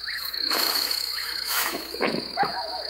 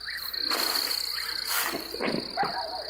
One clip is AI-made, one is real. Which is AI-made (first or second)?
first